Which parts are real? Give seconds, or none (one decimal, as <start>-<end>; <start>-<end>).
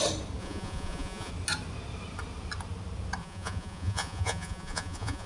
0.0-0.4; 1.3-3.2